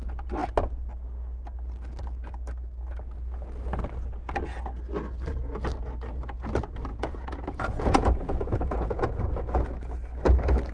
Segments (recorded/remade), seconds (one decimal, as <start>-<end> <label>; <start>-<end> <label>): 0.0-6.9 recorded; 6.9-9.2 remade; 9.2-10.7 recorded